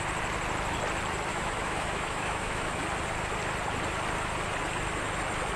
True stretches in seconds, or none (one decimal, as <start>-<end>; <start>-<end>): 0.0-1.3; 2.8-5.6